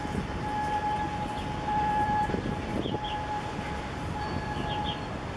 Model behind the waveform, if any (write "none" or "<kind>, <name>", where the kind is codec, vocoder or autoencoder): none